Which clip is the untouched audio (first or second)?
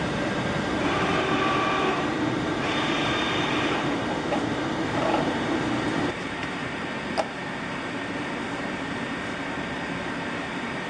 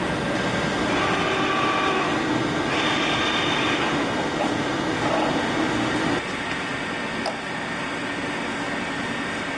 second